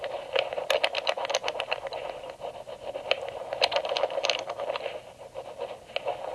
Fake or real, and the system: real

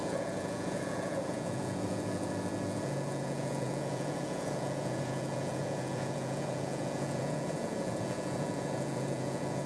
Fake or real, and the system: fake, vocoder, Vocos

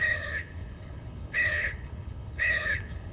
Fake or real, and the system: fake, codec, HILCodec